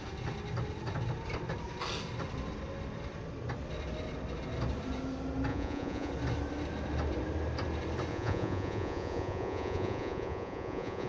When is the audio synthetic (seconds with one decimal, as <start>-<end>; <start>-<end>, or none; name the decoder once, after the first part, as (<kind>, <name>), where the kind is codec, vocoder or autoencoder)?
5.5-6.1 (vocoder, Vocos); 8.1-11.1